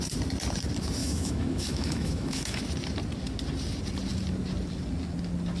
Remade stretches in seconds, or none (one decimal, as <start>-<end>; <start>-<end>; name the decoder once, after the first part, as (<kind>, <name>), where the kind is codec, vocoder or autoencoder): 1.0-2.6 (autoencoder, DAC-VAE)